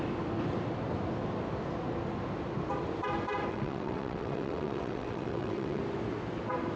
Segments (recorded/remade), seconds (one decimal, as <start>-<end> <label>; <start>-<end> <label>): 0.0-3.5 recorded; 3.5-5.8 remade; 5.8-6.8 recorded

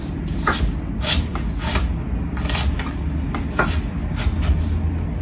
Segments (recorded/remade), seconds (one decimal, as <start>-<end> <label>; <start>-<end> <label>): 0.0-5.2 recorded

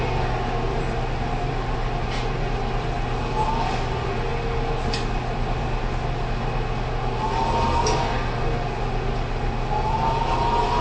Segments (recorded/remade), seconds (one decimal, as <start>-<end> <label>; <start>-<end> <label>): 0.0-10.8 recorded

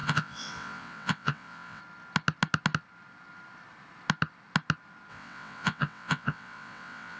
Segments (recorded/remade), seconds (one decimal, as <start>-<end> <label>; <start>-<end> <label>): 0.0-1.8 remade; 1.8-5.1 recorded; 5.1-7.2 remade